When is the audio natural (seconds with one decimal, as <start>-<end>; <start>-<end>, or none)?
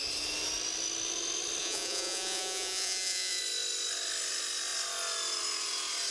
0.0-1.6; 3.4-6.1